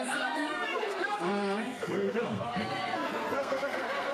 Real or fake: fake